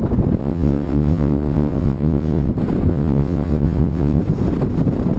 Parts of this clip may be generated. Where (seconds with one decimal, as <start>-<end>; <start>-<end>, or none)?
0.4-2.5; 2.9-4.2